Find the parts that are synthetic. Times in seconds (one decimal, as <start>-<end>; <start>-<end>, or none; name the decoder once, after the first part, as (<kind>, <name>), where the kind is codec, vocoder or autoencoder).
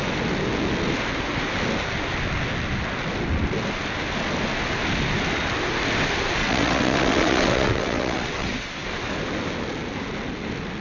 6.4-8.7 (vocoder, WaveNeXt)